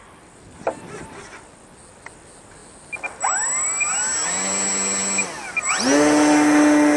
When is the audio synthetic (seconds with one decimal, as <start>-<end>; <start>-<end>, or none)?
none